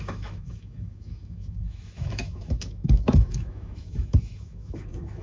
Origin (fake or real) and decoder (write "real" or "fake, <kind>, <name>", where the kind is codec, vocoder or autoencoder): fake, autoencoder, DAC-VAE